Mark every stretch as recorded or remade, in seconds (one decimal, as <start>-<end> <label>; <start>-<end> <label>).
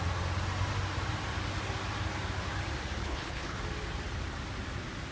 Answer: 0.0-3.0 recorded; 3.0-3.6 remade; 3.6-5.1 recorded